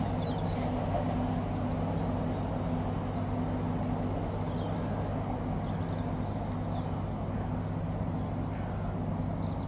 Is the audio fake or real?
real